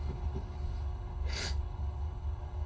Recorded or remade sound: remade